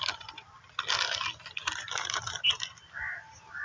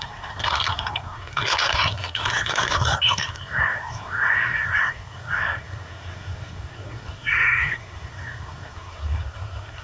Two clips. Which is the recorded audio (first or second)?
first